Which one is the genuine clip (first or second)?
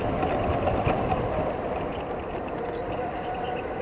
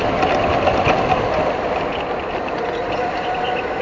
second